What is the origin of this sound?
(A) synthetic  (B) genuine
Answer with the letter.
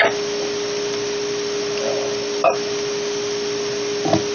B